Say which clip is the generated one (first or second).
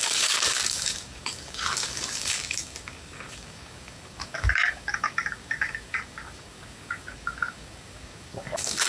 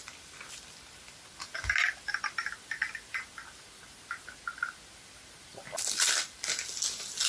first